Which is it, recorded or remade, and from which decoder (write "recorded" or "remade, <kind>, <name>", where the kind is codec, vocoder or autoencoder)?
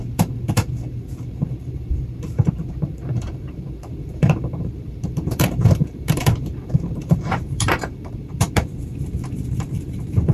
remade, vocoder, BigVGAN v2